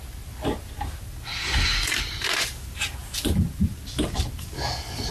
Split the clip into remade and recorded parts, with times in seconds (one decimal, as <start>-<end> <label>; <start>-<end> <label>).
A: 0.0-1.7 recorded; 1.7-3.8 remade; 3.8-5.1 recorded

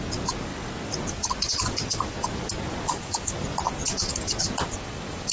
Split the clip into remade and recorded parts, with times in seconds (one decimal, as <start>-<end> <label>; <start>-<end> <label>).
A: 0.0-0.5 recorded; 0.5-3.7 remade; 3.7-5.3 recorded

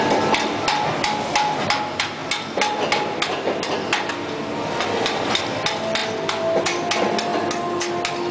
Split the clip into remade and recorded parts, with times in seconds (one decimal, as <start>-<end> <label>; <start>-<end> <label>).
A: 0.0-8.3 recorded

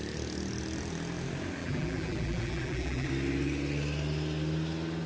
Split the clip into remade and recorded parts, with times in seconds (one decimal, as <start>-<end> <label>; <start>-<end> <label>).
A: 0.0-1.6 recorded; 1.6-3.1 remade; 3.1-5.1 recorded

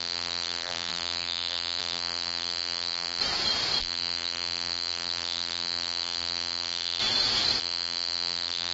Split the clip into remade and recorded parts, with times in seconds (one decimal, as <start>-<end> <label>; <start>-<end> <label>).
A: 0.0-3.2 remade; 3.2-3.8 recorded; 3.8-7.0 remade; 7.0-7.6 recorded; 7.6-8.7 remade

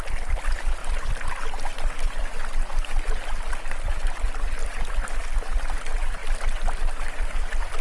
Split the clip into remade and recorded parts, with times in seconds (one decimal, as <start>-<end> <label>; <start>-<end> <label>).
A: 0.0-7.8 remade

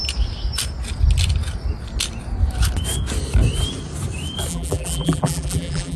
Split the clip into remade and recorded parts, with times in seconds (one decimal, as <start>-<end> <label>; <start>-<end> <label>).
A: 0.0-4.5 recorded; 4.5-6.0 remade